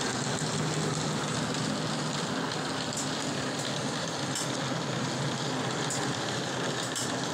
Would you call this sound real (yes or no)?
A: yes